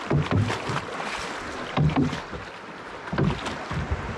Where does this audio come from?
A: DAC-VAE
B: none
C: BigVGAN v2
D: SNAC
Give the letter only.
B